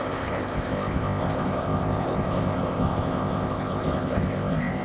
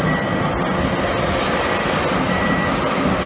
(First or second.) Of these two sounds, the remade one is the first